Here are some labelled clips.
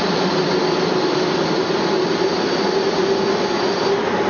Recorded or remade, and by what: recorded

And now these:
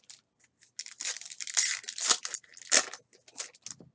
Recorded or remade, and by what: recorded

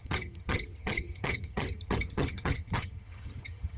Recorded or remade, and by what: remade, vocoder, HiFi-GAN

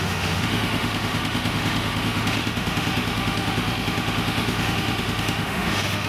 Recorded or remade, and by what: remade, autoencoder, DAC-VAE